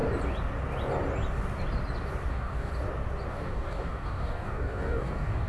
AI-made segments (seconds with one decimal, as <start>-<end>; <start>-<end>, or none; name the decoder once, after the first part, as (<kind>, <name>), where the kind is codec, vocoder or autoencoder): 2.3-2.7 (codec, DAC); 3.3-5.5

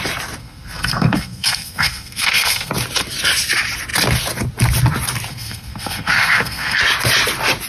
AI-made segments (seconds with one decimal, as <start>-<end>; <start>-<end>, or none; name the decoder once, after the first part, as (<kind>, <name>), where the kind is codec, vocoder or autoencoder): 0.4-2.7 (codec, SNAC); 5.3-6.8

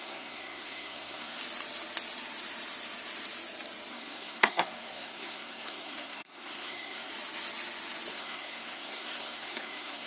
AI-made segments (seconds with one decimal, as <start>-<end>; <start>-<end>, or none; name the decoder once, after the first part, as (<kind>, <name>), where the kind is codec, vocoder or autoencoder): 0.0-1.4 (codec, SNAC); 3.9-7.1; 8.1-10.1